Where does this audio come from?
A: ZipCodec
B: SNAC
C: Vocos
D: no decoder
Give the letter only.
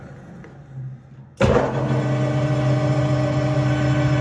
D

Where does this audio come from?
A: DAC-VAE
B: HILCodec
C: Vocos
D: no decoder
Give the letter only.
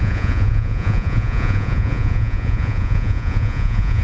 C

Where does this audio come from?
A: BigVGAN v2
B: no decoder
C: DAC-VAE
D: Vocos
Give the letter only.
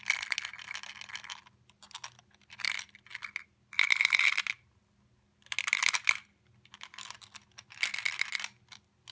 B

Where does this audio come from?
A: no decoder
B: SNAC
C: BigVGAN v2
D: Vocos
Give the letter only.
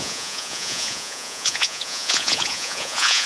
D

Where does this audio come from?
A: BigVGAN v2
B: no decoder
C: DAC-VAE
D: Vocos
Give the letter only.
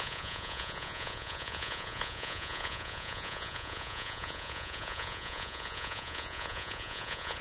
D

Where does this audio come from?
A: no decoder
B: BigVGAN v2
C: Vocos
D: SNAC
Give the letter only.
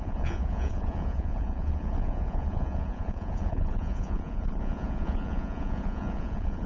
C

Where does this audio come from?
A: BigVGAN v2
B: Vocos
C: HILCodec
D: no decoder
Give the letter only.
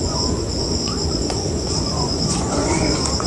B